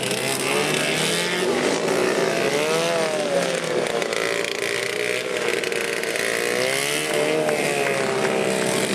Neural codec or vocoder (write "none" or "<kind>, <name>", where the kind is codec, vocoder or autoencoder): none